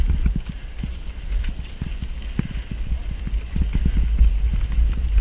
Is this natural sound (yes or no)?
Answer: yes